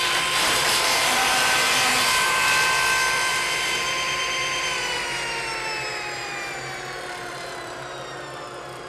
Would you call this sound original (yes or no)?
no